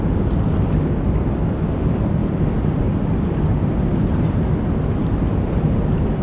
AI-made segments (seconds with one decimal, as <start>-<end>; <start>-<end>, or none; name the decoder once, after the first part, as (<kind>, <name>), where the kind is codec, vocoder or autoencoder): none